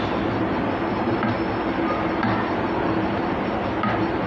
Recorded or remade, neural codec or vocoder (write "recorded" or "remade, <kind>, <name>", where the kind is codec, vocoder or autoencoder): recorded